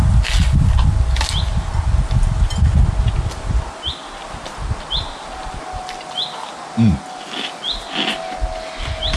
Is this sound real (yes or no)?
yes